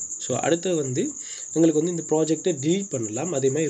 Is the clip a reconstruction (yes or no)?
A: no